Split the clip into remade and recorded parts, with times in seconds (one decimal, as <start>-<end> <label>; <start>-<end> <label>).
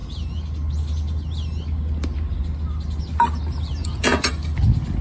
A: 0.0-3.8 recorded; 3.8-4.3 remade; 4.3-5.0 recorded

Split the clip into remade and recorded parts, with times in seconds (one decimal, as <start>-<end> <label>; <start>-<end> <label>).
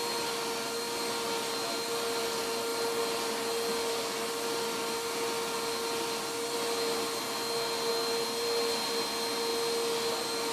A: 0.0-10.5 recorded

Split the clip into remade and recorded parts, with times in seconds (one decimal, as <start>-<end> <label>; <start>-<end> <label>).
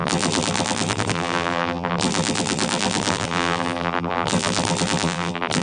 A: 0.0-5.6 remade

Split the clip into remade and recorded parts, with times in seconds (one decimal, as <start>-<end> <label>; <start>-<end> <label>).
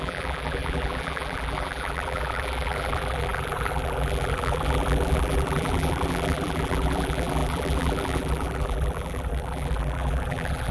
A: 0.0-10.7 remade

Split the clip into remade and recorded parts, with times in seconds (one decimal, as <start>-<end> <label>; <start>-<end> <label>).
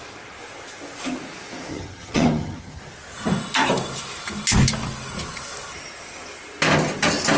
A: 0.0-1.7 recorded; 1.7-2.8 remade; 2.8-7.4 recorded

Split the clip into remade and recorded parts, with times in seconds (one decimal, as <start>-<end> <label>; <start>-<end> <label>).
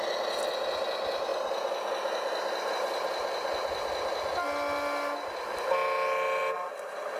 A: 0.0-7.2 recorded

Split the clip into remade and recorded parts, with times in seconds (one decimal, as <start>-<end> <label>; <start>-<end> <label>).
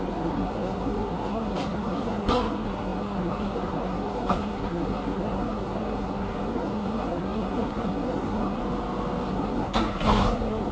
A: 0.0-8.6 remade; 8.6-9.3 recorded; 9.3-10.7 remade